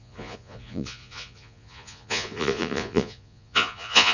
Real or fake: fake